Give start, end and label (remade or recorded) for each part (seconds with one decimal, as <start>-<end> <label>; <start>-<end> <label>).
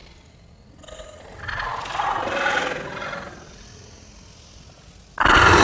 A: 0.0-5.6 recorded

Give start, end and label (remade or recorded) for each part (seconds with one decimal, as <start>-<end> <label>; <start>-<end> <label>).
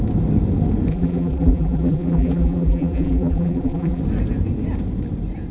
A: 0.0-0.9 recorded; 0.9-4.0 remade; 4.0-5.5 recorded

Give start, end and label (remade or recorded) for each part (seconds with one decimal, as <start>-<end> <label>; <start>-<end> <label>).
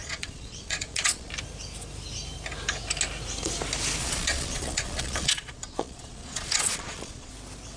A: 0.0-1.3 remade; 1.3-4.0 recorded; 4.0-7.3 remade; 7.3-7.8 recorded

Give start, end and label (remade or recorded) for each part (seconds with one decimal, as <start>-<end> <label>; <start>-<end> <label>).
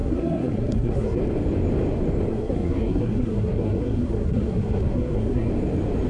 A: 0.0-1.2 remade; 1.2-2.3 recorded; 2.3-5.5 remade; 5.5-6.1 recorded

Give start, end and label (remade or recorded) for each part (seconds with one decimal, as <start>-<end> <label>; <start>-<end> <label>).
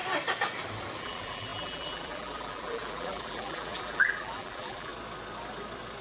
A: 0.0-1.0 recorded; 1.0-4.9 remade; 4.9-6.0 recorded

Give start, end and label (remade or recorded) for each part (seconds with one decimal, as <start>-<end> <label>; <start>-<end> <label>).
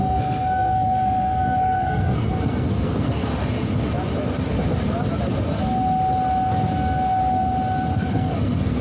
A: 0.0-3.3 remade; 3.3-8.0 recorded; 8.0-8.8 remade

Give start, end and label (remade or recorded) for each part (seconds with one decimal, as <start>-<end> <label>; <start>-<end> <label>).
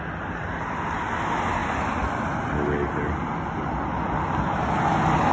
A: 0.0-5.3 recorded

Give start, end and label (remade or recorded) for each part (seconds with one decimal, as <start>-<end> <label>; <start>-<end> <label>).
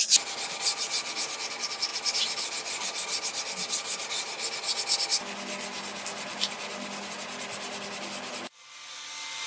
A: 0.0-9.5 recorded